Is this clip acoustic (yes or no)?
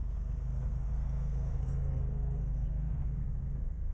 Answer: no